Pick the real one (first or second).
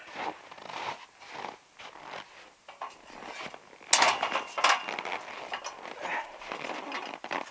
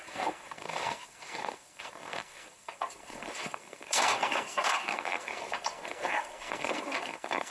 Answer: first